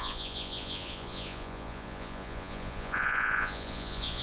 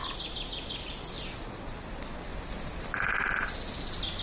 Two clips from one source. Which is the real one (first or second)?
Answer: second